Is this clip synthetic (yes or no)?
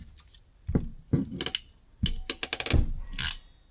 no